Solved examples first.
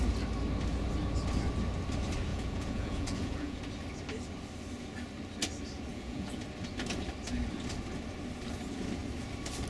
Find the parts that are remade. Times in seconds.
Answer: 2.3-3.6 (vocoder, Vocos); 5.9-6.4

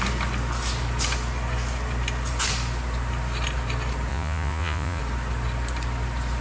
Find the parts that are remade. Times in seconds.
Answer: 4.1-5.0 (vocoder, Vocos)

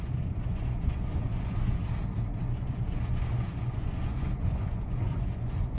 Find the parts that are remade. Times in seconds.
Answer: 0.0-1.8 (vocoder, Vocos); 2.4-5.8

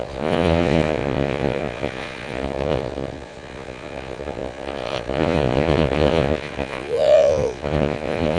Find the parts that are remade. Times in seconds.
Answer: 0.0-8.4 (vocoder, Vocos)

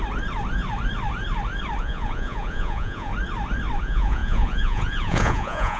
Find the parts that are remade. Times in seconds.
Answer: 1.8-3.1 (vocoder, Vocos); 3.8-5.8

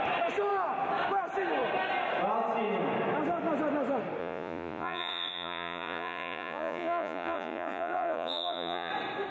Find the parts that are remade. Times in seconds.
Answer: 4.2-8.9 (vocoder, Vocos)